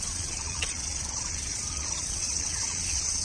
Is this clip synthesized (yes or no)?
yes